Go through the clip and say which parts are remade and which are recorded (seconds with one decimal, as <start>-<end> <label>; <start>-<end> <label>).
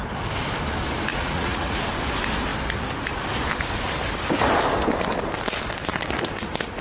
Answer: 0.0-1.1 recorded; 1.1-1.8 remade; 1.8-6.8 recorded